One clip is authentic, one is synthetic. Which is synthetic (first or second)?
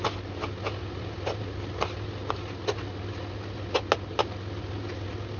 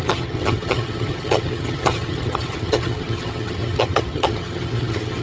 second